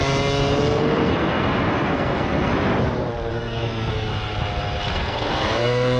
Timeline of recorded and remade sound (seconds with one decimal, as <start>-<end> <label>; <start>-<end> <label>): 0.0-0.6 recorded; 0.6-2.5 remade; 2.5-3.3 recorded; 3.3-4.1 remade; 4.1-4.9 recorded; 4.9-6.0 remade